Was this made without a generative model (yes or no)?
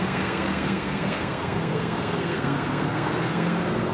no